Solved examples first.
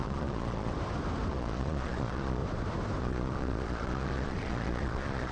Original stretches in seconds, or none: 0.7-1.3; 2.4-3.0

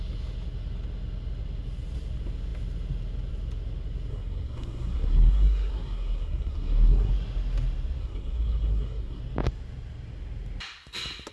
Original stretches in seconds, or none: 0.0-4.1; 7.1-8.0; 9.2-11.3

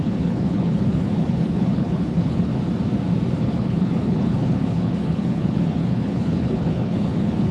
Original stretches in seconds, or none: 2.5-3.4

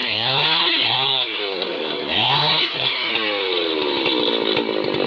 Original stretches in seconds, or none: 3.1-5.1

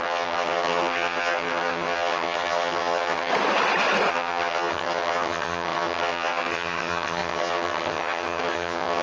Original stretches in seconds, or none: 3.3-4.1

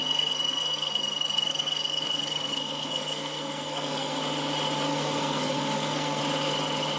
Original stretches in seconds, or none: 4.2-4.9; 6.2-7.0

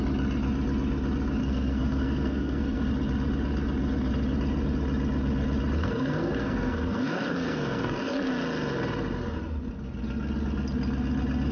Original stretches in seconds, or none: 0.0-1.4; 2.9-5.8; 8.3-11.5

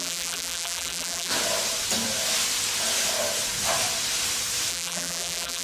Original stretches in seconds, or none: 1.3-4.7